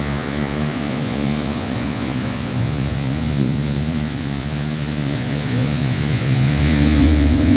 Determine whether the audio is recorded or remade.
remade